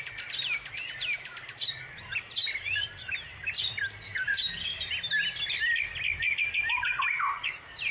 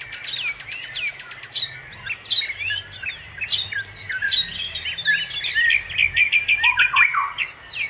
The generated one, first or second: first